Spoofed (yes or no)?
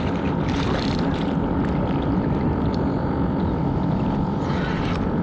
no